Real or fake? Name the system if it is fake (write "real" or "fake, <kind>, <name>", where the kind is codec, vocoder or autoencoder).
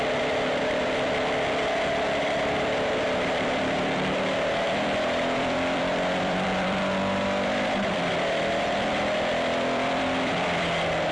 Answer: fake, vocoder, BigVGAN v2